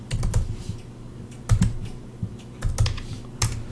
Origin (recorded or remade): recorded